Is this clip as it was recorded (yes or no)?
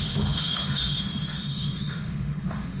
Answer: no